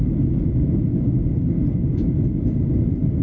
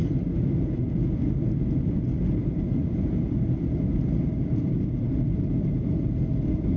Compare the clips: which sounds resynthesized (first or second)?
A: second